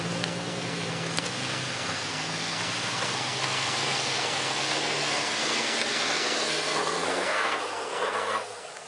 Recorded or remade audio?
remade